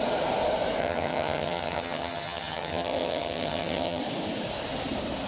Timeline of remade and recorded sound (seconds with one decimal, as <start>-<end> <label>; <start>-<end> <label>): 0.0-0.8 recorded; 0.8-4.0 remade; 4.0-5.3 recorded